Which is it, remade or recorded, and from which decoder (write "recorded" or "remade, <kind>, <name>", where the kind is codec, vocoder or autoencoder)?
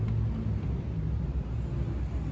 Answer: recorded